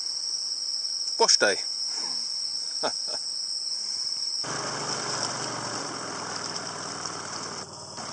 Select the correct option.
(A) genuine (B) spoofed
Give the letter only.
A